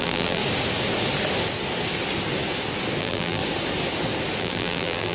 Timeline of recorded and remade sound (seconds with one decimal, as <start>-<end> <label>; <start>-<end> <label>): 0.0-0.4 remade; 0.4-3.0 recorded; 3.0-3.4 remade; 3.4-4.4 recorded; 4.4-5.1 remade

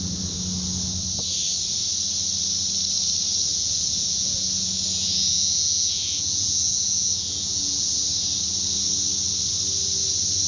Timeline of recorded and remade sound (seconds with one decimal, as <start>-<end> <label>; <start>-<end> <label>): 0.0-3.5 recorded; 3.5-8.0 remade; 8.0-10.5 recorded

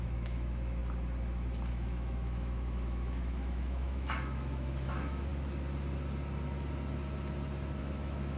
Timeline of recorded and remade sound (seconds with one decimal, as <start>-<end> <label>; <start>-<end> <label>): 0.0-0.8 remade; 0.8-1.7 recorded; 1.7-5.3 remade; 5.3-7.8 recorded; 7.8-8.4 remade

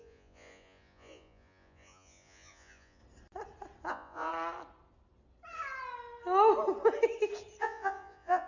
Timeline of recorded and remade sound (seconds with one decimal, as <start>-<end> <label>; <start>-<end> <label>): 0.0-3.0 remade; 3.0-3.9 recorded; 3.9-4.3 remade; 4.3-7.6 recorded; 7.6-8.5 remade

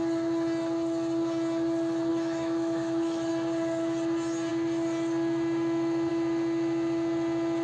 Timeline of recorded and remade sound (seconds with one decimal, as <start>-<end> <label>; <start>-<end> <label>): 0.0-2.1 recorded; 2.1-3.3 remade; 3.3-7.6 recorded

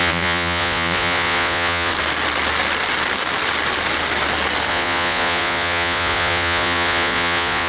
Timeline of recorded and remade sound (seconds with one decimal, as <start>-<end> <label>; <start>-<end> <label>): 0.0-1.9 remade; 1.9-4.7 recorded; 4.7-7.7 remade